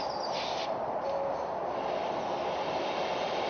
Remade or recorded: recorded